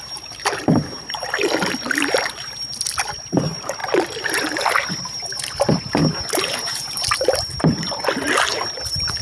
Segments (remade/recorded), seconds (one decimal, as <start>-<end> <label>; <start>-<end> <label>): 0.0-9.2 recorded